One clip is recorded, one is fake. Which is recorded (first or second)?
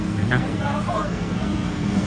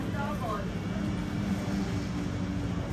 second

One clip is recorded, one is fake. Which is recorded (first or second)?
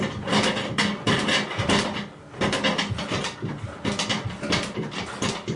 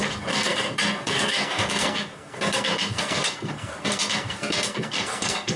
first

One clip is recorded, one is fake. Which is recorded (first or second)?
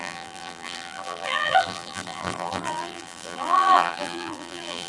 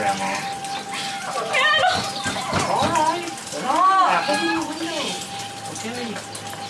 second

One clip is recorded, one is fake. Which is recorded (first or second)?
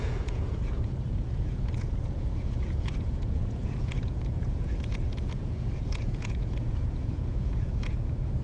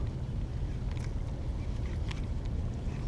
second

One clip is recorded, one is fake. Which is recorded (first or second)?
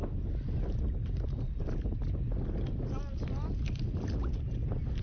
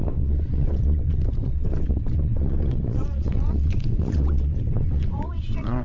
first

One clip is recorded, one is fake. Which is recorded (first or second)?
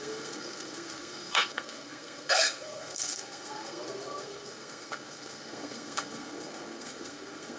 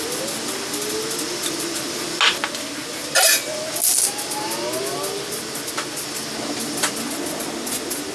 second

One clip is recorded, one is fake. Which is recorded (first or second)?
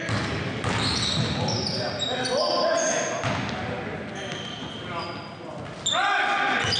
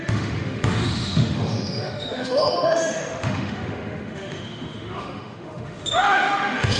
first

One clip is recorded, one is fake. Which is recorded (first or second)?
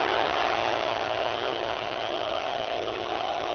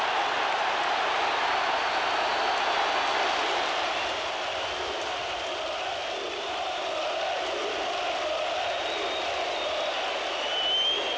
second